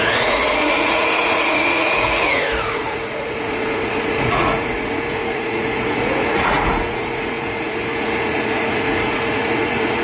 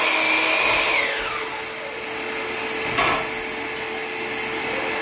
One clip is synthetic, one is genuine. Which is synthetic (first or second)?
first